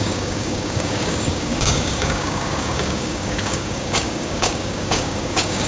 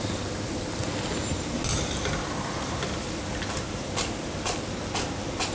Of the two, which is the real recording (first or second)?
second